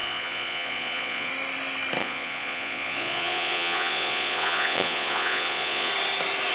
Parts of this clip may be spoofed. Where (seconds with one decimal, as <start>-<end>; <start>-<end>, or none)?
0.0-1.3; 2.0-5.9